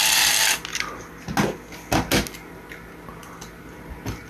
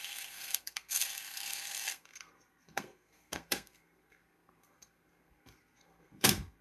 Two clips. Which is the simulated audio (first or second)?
second